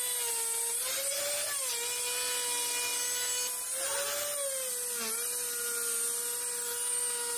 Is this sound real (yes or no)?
yes